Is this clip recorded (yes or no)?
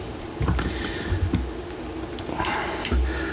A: yes